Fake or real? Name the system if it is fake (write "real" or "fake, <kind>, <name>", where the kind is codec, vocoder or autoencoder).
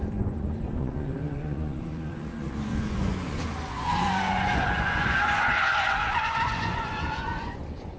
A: fake, vocoder, Vocos